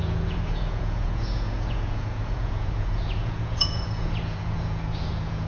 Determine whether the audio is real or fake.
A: fake